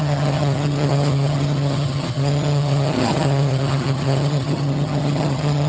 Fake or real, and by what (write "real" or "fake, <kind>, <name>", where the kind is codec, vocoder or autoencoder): fake, vocoder, HiFi-GAN